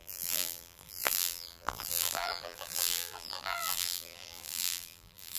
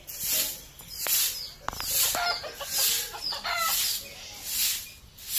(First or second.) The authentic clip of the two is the second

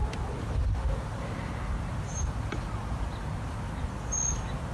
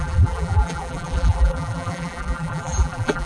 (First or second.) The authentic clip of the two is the first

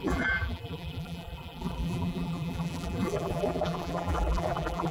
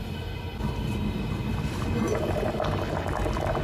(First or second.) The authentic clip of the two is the second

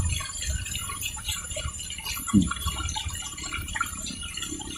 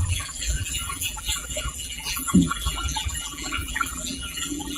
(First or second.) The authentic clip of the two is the first